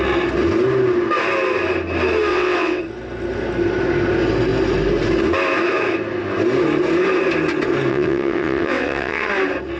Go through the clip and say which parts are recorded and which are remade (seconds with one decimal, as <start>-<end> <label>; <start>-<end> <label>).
0.0-2.3 recorded; 2.3-2.8 remade; 2.8-7.9 recorded; 7.9-9.3 remade; 9.3-9.8 recorded